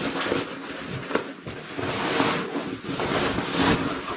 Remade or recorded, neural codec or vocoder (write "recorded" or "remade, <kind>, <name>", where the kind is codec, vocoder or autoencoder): recorded